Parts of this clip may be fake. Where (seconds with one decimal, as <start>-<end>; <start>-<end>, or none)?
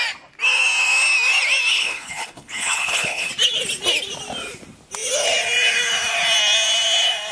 1.7-3.3